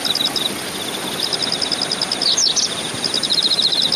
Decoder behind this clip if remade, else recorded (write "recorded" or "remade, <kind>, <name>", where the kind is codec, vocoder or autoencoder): recorded